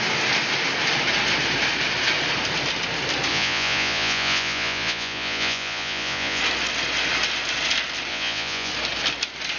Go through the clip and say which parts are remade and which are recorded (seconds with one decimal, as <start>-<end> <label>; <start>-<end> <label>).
0.0-3.3 recorded; 3.3-6.4 remade; 6.4-8.1 recorded; 8.1-8.7 remade; 8.7-9.6 recorded